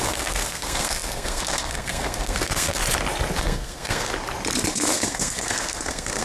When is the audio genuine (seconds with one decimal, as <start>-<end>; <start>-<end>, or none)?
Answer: 2.8-3.4; 4.1-4.7